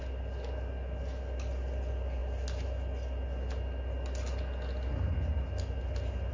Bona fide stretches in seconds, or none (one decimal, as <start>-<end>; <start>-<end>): 0.0-6.3